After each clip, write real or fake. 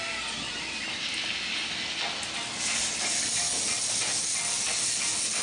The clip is real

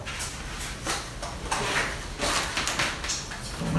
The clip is real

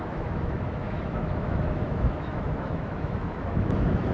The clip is fake